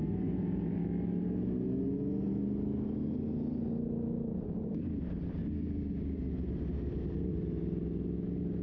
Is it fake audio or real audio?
real